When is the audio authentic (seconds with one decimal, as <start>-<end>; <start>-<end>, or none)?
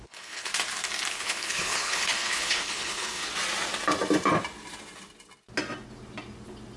0.5-1.1; 3.2-6.8